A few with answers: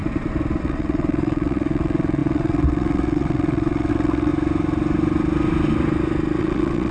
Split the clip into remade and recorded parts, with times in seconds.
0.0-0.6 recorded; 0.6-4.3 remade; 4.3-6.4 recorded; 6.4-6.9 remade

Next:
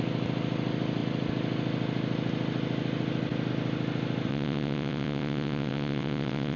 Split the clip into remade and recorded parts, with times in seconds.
0.0-4.3 recorded; 4.3-6.6 remade

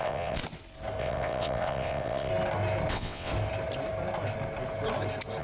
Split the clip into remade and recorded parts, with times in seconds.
0.0-0.4 remade; 0.4-1.0 recorded; 1.0-2.3 remade; 2.3-2.9 recorded; 2.9-3.3 remade; 3.3-5.4 recorded

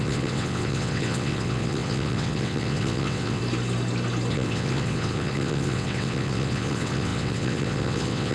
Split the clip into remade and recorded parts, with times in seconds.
0.0-3.4 remade; 3.4-4.3 recorded; 4.3-8.3 remade

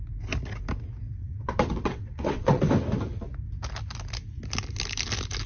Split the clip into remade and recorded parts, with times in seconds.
0.0-1.2 recorded; 1.2-2.6 remade; 2.6-5.5 recorded

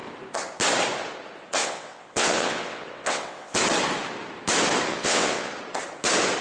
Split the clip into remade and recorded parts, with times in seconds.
0.0-1.6 recorded; 1.6-3.6 remade; 3.6-4.9 recorded; 4.9-5.5 remade; 5.5-6.4 recorded

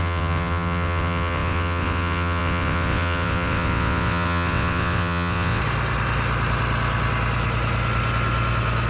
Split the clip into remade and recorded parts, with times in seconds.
0.0-5.6 remade; 5.6-8.9 recorded

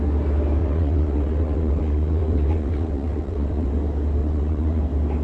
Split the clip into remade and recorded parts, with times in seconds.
0.0-0.6 recorded; 0.6-3.7 remade; 3.7-4.2 recorded; 4.2-4.8 remade; 4.8-5.2 recorded